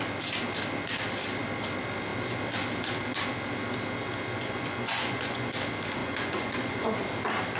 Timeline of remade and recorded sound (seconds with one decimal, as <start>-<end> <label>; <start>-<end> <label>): 0.0-4.4 recorded; 4.4-5.5 remade; 5.5-6.0 recorded; 6.0-7.0 remade; 7.0-7.6 recorded